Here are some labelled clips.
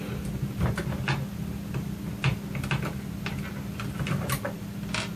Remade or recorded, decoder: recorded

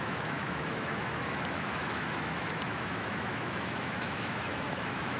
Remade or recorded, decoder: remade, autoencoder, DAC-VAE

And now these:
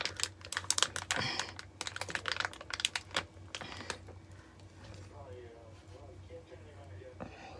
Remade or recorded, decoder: recorded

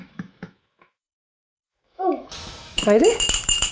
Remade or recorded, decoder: remade, autoencoder, DAC-VAE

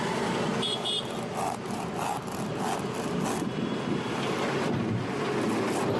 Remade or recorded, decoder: recorded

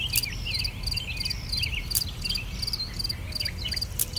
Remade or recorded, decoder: recorded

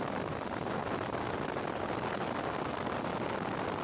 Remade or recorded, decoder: recorded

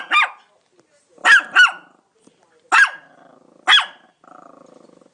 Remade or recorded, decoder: recorded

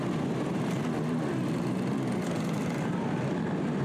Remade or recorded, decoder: recorded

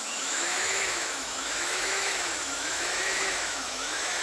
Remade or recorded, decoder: remade, autoencoder, DAC-VAE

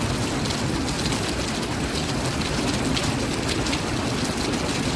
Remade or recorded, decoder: recorded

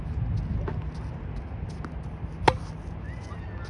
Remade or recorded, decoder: recorded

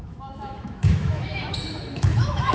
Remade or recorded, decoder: remade, autoencoder, DAC-VAE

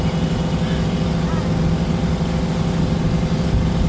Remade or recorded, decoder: recorded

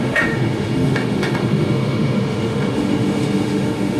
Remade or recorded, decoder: remade, autoencoder, DAC-VAE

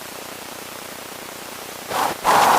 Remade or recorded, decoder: recorded